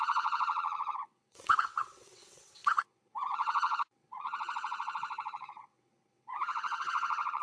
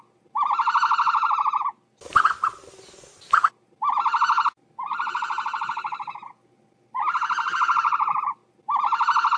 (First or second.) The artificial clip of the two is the first